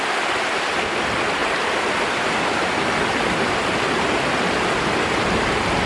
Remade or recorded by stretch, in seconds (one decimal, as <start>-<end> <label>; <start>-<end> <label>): 0.0-5.9 recorded

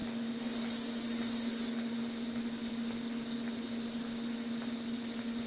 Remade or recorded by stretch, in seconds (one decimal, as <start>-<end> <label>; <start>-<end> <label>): 0.0-5.5 recorded